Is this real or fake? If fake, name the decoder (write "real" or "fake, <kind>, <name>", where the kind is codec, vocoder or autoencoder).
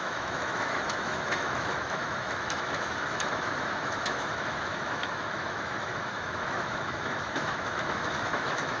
fake, autoencoder, DAC-VAE